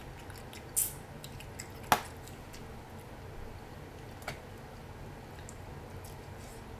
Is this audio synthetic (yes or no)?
no